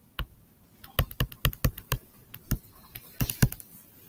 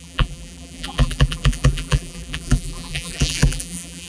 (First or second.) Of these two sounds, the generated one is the second